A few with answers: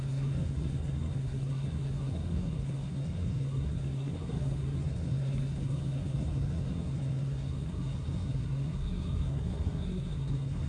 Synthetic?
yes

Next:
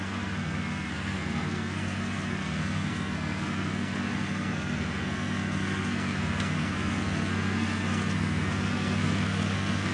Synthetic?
yes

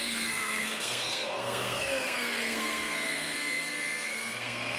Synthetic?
yes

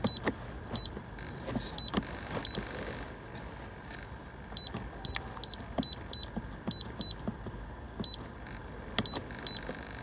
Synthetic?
no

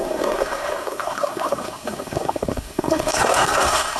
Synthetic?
yes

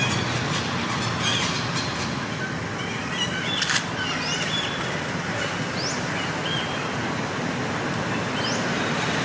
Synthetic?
no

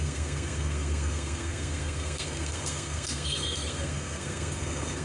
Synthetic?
yes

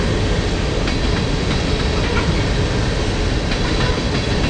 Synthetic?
no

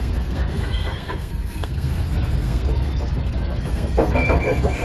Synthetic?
yes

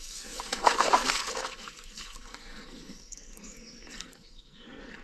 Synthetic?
yes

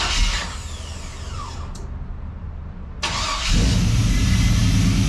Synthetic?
no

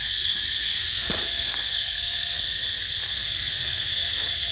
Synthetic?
yes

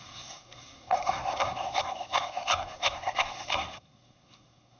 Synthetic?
yes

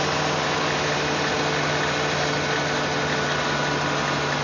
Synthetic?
no